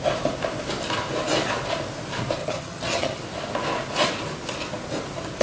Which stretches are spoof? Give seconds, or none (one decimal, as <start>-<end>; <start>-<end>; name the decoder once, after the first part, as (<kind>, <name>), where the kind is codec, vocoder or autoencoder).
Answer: 2.4-3.2 (vocoder, HiFi-GAN)